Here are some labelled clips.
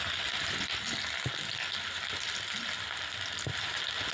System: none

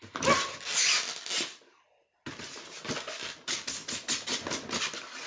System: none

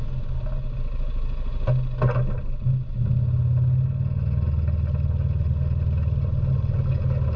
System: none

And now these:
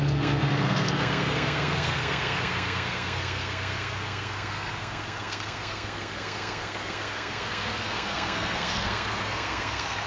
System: codec, SNAC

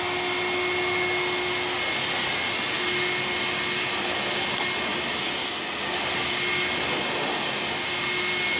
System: none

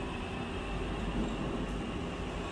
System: none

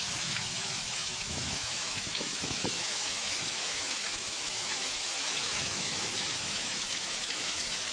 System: autoencoder, DAC-VAE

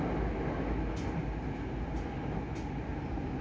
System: none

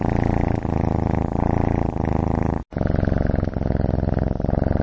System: none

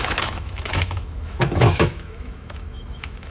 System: autoencoder, DAC-VAE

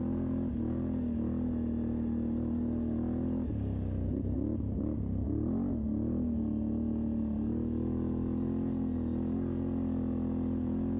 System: none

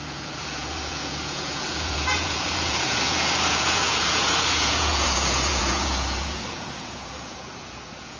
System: vocoder, Vocos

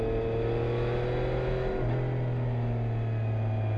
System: none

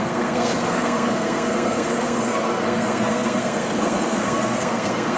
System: codec, SNAC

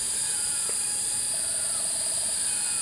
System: vocoder, BigVGAN v2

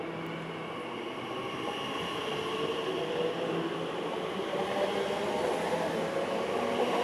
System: none